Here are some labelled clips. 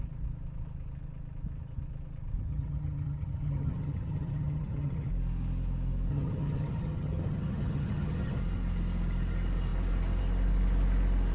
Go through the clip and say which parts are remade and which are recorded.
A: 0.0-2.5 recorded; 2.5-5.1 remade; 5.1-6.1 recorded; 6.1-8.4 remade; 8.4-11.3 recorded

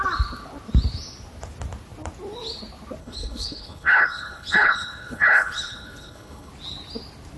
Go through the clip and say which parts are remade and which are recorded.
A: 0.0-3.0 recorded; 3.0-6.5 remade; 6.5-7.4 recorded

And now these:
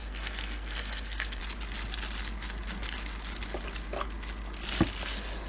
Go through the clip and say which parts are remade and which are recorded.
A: 0.0-1.4 remade; 1.4-5.5 recorded

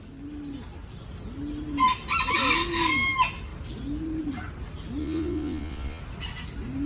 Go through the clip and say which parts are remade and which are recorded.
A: 0.0-5.0 recorded; 5.0-6.0 remade; 6.0-6.9 recorded

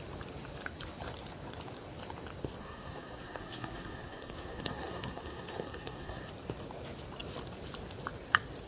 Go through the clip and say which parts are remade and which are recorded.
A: 0.0-2.6 recorded; 2.6-6.3 remade; 6.3-8.7 recorded

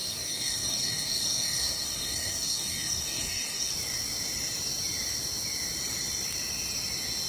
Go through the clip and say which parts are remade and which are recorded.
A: 0.0-3.7 remade; 3.7-7.3 recorded